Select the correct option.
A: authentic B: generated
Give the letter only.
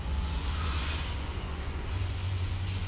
B